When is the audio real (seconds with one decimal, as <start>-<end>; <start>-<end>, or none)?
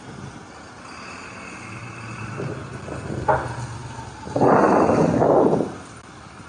0.0-1.8; 2.7-6.5